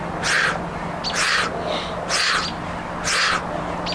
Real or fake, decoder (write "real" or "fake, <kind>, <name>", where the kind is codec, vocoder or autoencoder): real